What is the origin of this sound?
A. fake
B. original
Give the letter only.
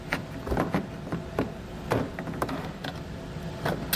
B